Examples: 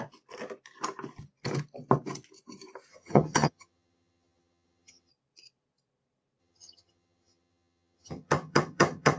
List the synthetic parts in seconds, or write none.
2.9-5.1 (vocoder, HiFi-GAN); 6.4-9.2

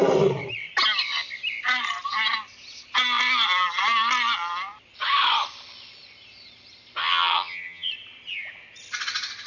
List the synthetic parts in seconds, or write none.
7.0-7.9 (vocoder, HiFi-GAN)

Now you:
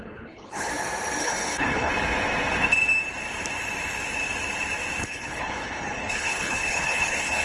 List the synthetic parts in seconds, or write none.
0.0-0.7 (codec, HILCodec); 1.2-1.9; 5.0-7.4